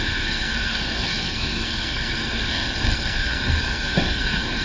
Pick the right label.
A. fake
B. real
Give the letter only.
A